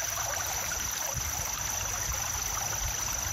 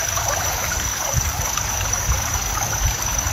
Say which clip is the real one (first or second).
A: first